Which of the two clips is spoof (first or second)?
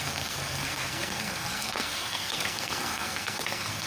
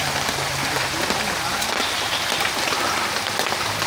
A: first